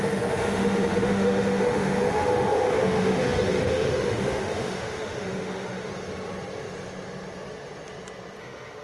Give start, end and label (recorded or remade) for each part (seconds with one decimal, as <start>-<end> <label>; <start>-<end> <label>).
0.0-5.9 remade; 5.9-8.4 recorded; 8.4-8.8 remade